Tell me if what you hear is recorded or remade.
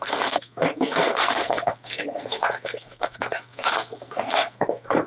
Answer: remade